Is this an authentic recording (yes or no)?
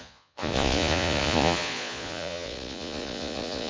no